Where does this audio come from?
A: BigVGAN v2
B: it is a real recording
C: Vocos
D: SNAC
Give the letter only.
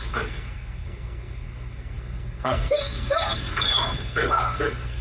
D